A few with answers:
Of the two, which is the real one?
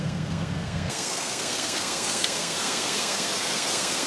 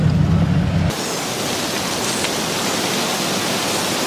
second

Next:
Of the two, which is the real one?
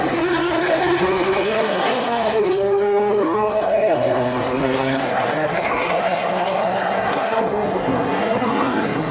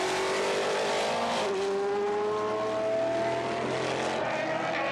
second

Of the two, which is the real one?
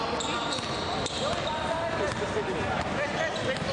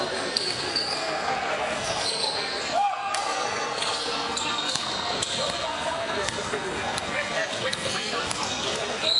first